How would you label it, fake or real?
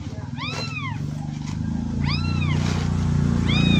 real